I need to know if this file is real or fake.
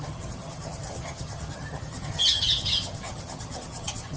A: fake